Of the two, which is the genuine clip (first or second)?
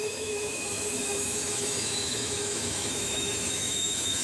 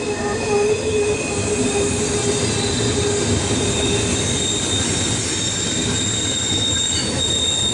second